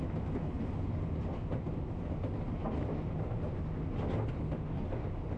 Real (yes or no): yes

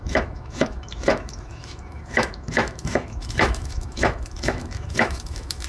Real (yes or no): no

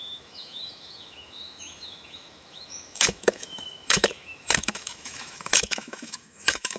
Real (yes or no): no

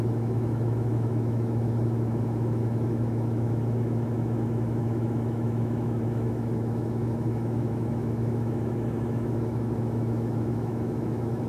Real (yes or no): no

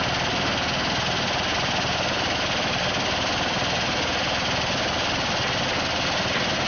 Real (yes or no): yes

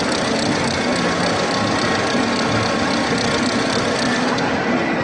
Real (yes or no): yes